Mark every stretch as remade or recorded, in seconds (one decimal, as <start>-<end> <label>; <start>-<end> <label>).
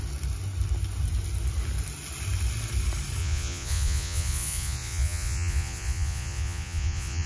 0.0-3.2 recorded; 3.2-7.3 remade